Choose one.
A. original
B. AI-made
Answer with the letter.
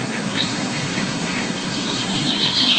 B